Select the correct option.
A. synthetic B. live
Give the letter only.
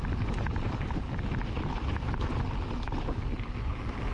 B